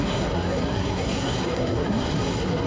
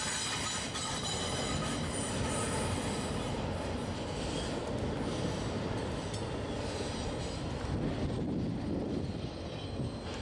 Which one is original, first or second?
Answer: second